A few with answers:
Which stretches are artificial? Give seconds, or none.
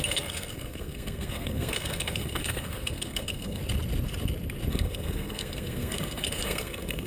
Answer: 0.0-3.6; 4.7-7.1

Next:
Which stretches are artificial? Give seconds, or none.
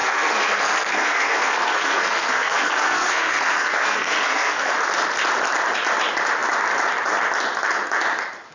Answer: 0.0-4.7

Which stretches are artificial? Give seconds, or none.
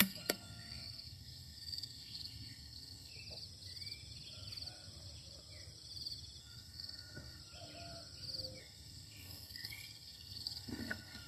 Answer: 0.0-3.1; 6.4-7.4; 8.6-11.3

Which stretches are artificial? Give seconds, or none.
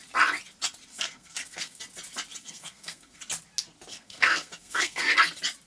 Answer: 0.9-1.8; 2.4-3.2; 3.9-5.1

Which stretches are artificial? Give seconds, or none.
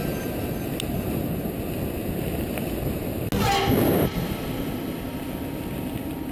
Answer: none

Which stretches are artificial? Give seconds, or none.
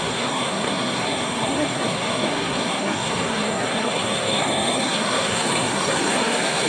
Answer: 0.0-6.7